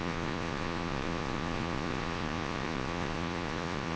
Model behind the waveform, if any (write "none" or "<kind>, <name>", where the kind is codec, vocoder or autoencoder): vocoder, Vocos